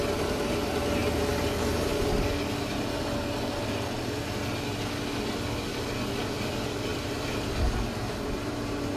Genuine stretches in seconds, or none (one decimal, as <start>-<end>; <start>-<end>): 0.0-9.0